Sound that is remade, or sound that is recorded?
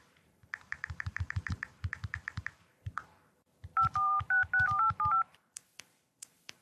remade